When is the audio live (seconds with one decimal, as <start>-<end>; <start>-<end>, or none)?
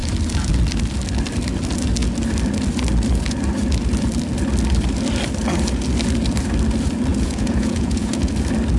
0.0-7.1; 8.3-8.8